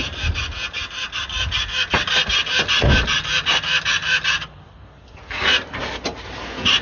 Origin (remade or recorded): recorded